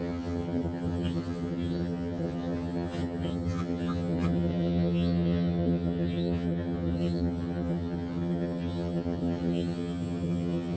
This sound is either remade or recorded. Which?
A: remade